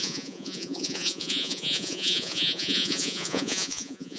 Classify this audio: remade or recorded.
remade